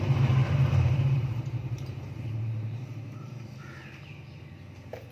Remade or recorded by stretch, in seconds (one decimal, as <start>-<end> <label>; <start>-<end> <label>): 0.0-0.4 recorded; 0.4-3.5 remade; 3.5-5.1 recorded